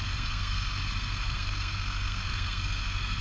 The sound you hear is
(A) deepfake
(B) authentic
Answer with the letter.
A